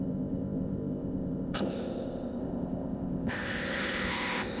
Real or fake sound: fake